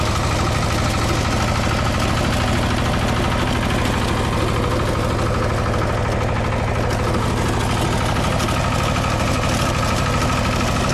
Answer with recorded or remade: recorded